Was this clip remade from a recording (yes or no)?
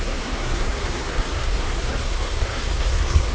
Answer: yes